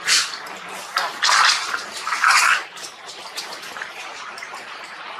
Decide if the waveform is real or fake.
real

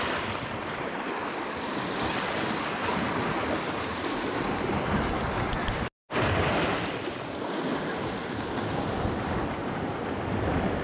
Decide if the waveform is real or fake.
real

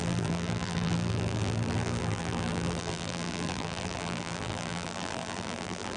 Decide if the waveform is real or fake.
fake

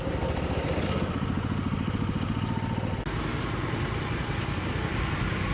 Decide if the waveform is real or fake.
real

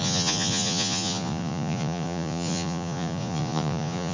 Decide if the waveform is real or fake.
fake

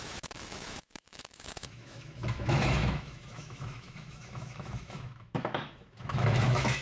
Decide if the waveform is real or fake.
fake